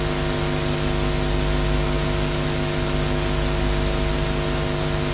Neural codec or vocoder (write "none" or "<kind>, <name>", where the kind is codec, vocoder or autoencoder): none